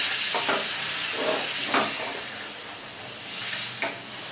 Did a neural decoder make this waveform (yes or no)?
no